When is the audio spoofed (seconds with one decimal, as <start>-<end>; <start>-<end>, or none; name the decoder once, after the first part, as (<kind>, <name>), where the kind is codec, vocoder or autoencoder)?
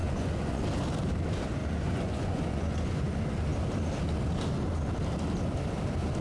0.0-0.6 (vocoder, Vocos); 1.6-3.1